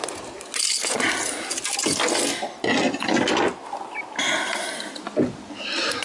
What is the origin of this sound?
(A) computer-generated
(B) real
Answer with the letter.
B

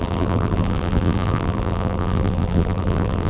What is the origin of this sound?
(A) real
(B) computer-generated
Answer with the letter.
B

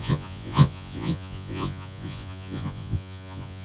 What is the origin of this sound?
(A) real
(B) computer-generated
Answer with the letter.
B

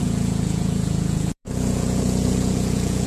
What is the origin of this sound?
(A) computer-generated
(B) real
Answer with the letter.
A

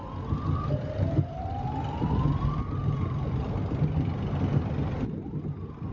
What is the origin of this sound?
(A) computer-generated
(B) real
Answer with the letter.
B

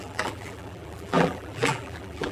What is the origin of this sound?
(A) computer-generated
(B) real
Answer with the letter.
A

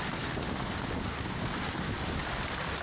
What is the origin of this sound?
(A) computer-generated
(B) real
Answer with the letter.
A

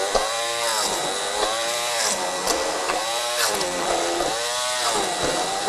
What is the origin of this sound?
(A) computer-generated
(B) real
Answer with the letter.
A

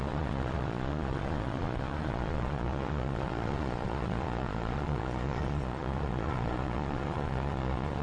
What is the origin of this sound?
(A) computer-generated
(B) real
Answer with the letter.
A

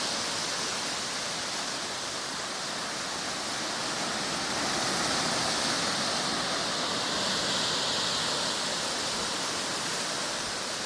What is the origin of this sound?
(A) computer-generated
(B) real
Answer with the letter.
B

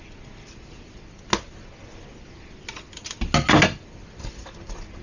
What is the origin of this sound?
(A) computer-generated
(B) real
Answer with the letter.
B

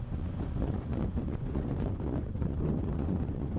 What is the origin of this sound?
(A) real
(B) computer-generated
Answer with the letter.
B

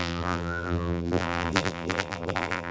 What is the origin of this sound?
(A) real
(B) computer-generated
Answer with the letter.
B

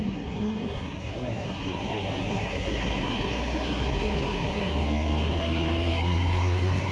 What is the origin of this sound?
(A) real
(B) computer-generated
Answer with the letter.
B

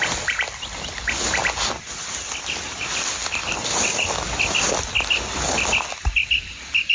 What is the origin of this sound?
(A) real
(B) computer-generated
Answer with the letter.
A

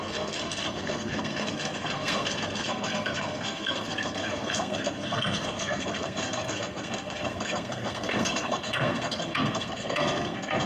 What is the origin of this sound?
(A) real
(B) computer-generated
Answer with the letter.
B